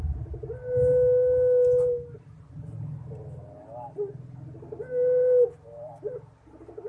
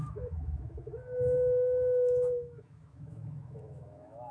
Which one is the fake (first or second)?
second